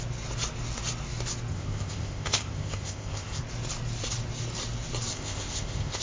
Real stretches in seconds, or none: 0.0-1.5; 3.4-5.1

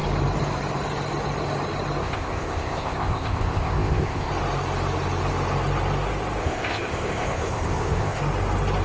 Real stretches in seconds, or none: 0.0-2.0; 4.3-6.4; 8.2-8.8

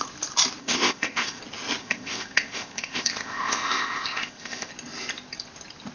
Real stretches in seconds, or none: 0.0-0.6; 1.4-1.8; 4.7-5.9